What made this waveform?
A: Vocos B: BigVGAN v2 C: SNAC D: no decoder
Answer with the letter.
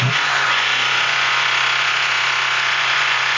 A